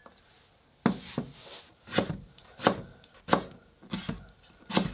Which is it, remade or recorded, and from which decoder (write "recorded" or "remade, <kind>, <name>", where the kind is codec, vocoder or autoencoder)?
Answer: recorded